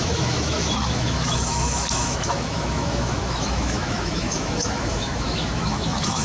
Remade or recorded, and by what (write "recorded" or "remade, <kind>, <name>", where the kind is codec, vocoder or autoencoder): remade, autoencoder, DAC-VAE